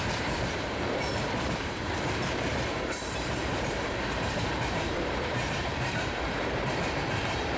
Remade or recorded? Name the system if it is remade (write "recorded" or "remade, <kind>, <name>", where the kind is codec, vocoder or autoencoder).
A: remade, vocoder, BigVGAN v2